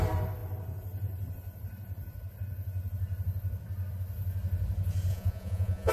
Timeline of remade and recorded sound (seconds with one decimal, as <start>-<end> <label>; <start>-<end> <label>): 0.0-5.1 recorded; 5.1-5.9 remade